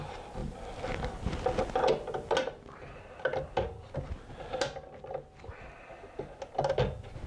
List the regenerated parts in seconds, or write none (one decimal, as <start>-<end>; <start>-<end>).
none